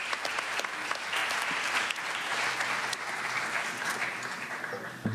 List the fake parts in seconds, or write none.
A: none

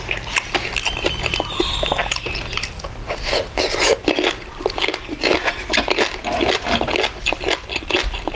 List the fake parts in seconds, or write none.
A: none

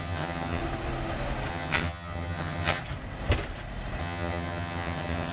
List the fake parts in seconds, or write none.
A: 0.0-0.6 (vocoder, HiFi-GAN); 1.5-2.8; 4.0-5.3

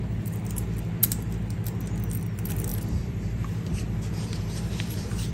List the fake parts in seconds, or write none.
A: 2.7-5.3 (vocoder, BigVGAN v2)

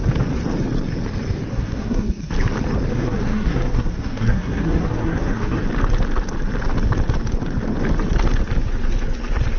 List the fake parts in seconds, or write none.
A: 1.5-2.3 (codec, SNAC); 2.9-5.6

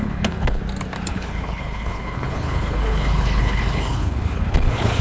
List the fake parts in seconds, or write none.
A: 0.0-0.6 (codec, HILCodec); 1.1-5.0

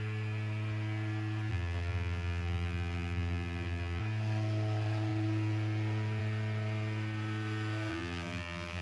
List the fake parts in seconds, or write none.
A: 1.5-4.0 (vocoder, BigVGAN v2); 7.9-8.8